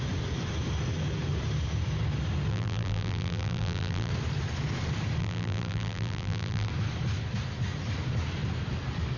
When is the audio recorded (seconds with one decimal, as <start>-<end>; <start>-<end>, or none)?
0.0-2.5; 4.1-5.2; 6.7-9.2